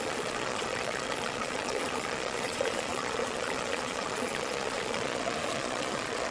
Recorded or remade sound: remade